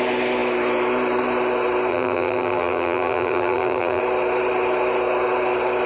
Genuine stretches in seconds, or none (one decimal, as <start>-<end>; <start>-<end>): 0.0-1.9; 4.0-5.9